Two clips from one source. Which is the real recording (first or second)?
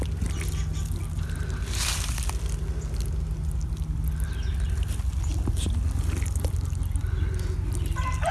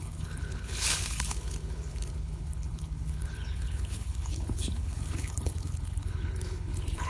first